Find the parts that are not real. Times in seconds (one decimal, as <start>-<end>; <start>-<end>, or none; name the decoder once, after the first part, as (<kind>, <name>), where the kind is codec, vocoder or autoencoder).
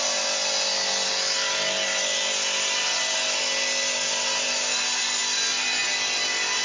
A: none